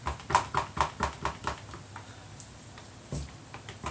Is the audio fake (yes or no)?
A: no